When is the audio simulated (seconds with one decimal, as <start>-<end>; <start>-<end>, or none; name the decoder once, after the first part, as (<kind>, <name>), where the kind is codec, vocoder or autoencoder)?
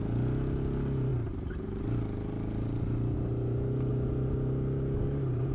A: none